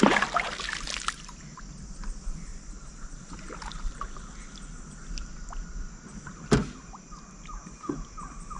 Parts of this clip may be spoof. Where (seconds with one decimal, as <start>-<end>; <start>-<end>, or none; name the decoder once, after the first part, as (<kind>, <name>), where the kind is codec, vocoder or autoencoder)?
2.5-4.2 (vocoder, BigVGAN v2)